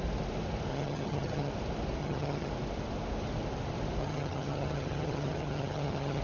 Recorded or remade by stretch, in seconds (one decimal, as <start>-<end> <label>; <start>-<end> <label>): 0.0-0.7 recorded; 0.7-1.5 remade; 1.5-2.0 recorded; 2.0-2.5 remade; 2.5-4.0 recorded; 4.0-6.2 remade